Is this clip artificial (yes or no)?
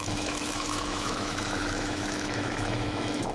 yes